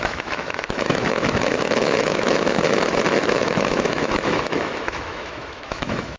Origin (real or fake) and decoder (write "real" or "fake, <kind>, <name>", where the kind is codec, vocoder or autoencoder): fake, autoencoder, DAC-VAE